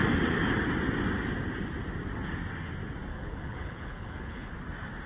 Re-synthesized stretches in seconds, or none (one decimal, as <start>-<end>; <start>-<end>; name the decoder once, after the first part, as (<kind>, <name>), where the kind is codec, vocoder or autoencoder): 3.1-4.5 (codec, HILCodec)